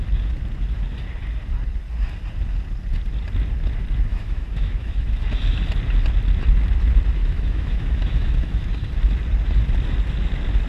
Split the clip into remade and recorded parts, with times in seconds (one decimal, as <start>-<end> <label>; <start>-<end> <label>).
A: 0.0-4.1 recorded; 4.1-5.2 remade; 5.2-7.2 recorded; 7.2-8.7 remade; 8.7-10.7 recorded